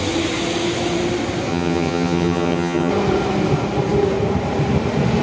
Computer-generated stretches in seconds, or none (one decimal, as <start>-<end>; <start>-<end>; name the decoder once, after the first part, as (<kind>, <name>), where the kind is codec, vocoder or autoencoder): 1.5-2.9 (vocoder, HiFi-GAN)